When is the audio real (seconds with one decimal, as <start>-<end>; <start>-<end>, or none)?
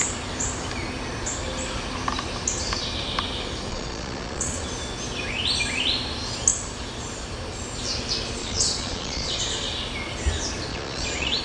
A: 0.0-3.7; 4.6-8.4; 9.4-10.7